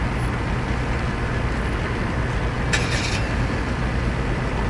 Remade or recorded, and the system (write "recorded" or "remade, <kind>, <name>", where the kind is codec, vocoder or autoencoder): recorded